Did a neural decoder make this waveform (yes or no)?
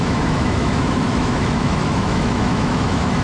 yes